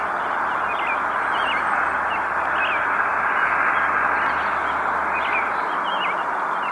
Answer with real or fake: real